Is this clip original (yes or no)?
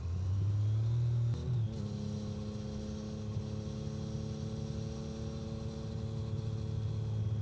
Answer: yes